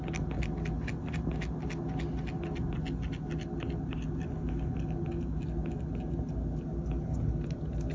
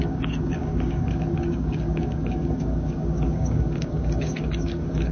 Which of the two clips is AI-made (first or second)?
second